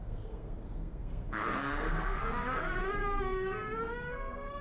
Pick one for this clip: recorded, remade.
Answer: remade